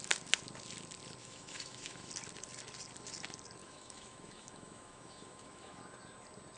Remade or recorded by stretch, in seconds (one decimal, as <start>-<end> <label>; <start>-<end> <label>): 0.0-1.2 recorded; 1.2-2.1 remade; 2.1-3.6 recorded; 3.6-5.8 remade; 5.8-6.6 recorded